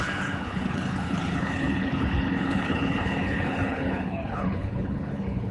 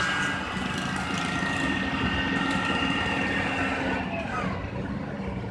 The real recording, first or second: second